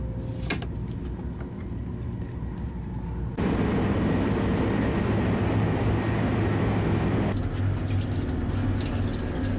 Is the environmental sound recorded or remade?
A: recorded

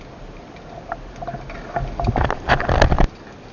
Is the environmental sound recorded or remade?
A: recorded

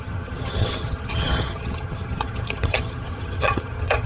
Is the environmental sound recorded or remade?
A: remade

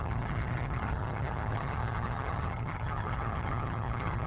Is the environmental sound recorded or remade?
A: remade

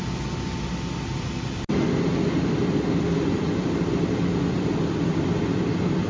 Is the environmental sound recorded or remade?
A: recorded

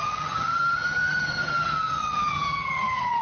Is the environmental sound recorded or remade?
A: remade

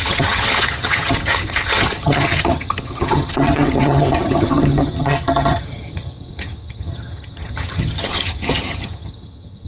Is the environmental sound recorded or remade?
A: remade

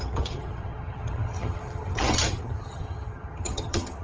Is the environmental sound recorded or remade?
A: remade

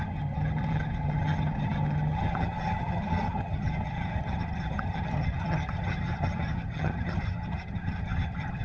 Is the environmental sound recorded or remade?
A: remade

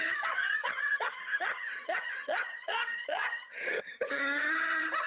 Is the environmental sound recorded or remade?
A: remade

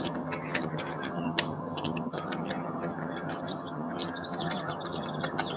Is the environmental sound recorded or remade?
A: remade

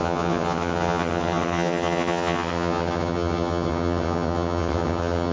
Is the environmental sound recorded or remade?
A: remade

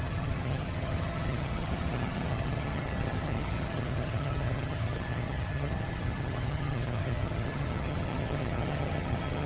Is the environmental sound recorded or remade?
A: remade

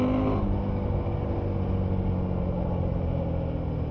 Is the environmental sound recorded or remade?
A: recorded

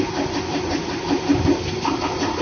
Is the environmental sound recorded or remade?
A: recorded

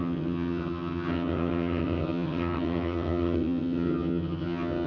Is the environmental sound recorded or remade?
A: remade